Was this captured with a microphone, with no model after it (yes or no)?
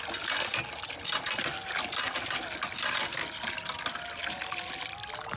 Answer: yes